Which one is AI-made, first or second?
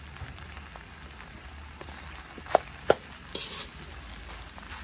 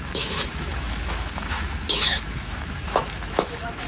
second